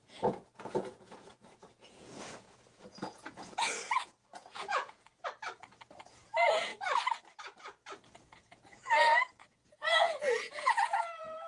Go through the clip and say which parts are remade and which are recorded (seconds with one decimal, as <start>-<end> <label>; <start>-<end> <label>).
0.0-5.1 remade; 5.1-6.0 recorded; 6.0-6.7 remade; 6.7-8.1 recorded; 8.1-11.5 remade